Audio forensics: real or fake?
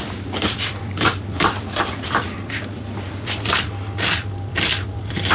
fake